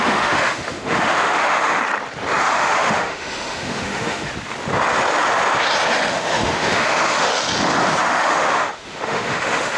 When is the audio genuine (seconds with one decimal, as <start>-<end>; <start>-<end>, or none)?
1.8-2.4; 4.3-6.1; 7.3-8.0